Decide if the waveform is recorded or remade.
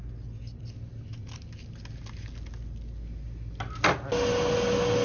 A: recorded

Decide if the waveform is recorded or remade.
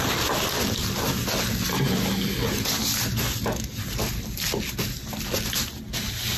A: recorded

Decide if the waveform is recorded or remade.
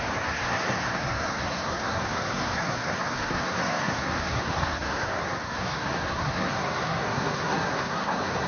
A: remade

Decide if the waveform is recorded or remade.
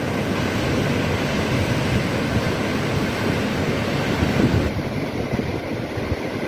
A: recorded